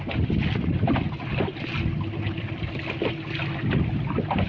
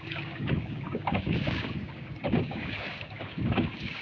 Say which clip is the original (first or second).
first